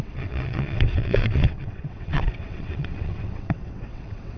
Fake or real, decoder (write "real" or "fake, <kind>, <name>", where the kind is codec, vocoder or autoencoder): fake, vocoder, WaveNeXt